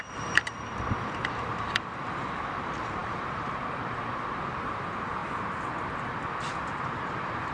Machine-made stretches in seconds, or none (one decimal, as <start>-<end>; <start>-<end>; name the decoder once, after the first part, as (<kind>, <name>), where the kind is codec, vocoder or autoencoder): 0.0-5.2 (vocoder, BigVGAN v2); 6.1-7.5